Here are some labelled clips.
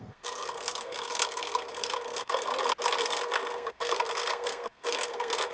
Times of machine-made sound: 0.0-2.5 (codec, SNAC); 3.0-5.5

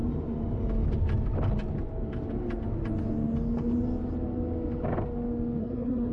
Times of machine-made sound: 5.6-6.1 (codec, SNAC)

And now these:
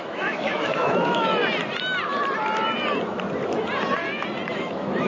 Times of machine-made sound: 0.0-1.4 (autoencoder, DAC-VAE); 4.5-5.1